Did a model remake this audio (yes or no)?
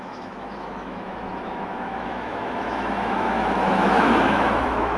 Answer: yes